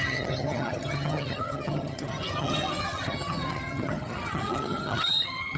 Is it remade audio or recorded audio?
remade